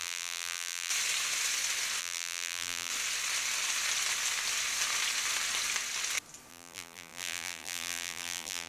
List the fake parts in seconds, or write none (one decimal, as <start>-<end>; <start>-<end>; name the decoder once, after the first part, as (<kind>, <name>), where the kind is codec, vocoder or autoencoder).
0.0-0.9 (vocoder, BigVGAN v2); 2.0-2.9; 6.5-8.7